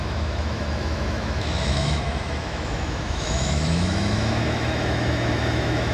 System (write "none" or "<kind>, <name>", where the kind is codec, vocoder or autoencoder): autoencoder, DAC-VAE